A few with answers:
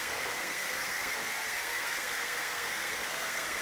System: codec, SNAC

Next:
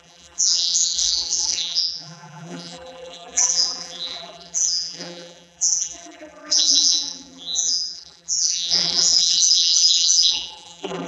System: vocoder, BigVGAN v2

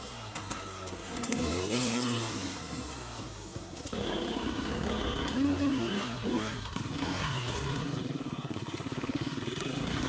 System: codec, SNAC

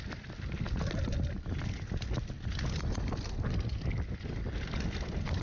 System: none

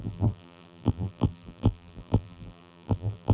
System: vocoder, BigVGAN v2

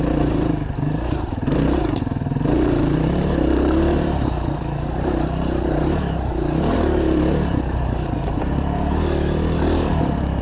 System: vocoder, BigVGAN v2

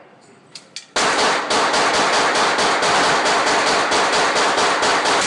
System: none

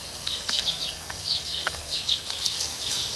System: codec, SNAC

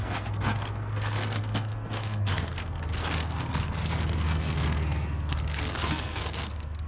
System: codec, SNAC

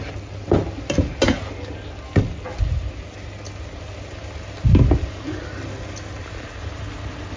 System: none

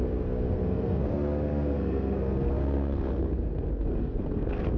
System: codec, SNAC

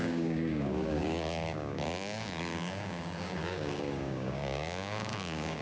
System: codec, DAC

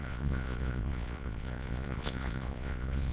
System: vocoder, Vocos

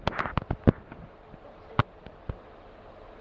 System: none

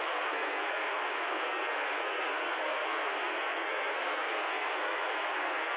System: codec, SNAC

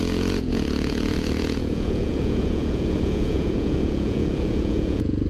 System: vocoder, Vocos